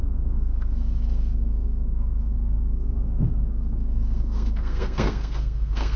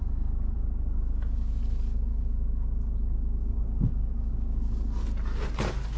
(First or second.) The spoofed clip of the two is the first